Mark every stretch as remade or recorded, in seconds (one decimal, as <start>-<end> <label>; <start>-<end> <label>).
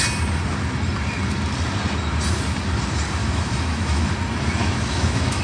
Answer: 0.0-3.2 recorded; 3.2-4.1 remade; 4.1-4.6 recorded; 4.6-5.4 remade